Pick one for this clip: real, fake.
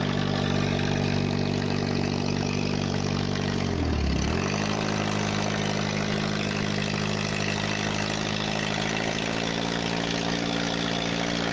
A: real